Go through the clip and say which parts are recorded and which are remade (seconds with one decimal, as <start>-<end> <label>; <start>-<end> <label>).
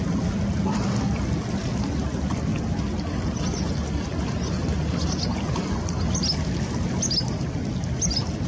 0.0-8.5 recorded